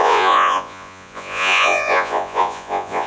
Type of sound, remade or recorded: remade